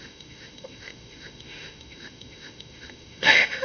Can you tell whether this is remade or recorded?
remade